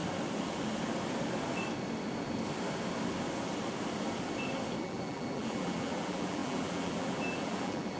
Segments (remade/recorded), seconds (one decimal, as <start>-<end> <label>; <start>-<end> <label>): 0.0-4.8 recorded; 4.8-8.0 remade